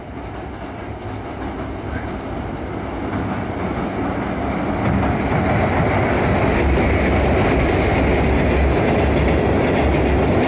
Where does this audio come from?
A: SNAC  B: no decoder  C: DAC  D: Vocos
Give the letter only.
B